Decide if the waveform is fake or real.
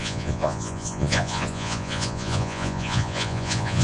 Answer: fake